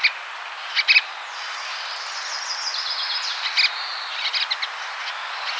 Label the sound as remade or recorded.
recorded